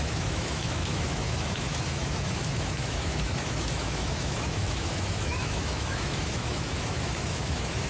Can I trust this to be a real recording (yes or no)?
no